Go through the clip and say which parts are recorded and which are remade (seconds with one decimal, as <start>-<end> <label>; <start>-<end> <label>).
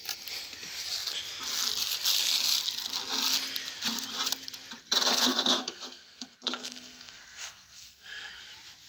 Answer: 0.0-5.1 recorded; 5.1-8.4 remade; 8.4-8.9 recorded